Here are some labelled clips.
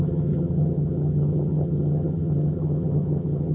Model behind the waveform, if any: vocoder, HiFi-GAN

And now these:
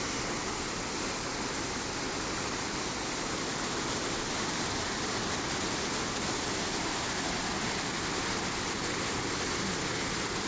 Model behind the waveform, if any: none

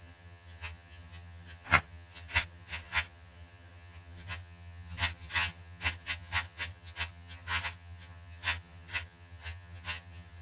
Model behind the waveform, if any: vocoder, HiFi-GAN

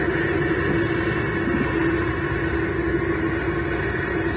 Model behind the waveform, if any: none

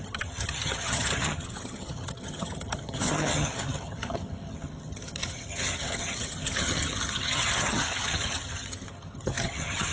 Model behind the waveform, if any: vocoder, HiFi-GAN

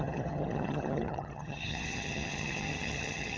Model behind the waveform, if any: vocoder, HiFi-GAN